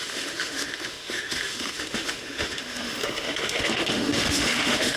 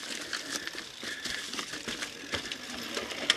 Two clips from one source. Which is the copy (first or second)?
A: first